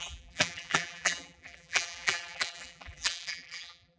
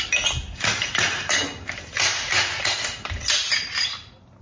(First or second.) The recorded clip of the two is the second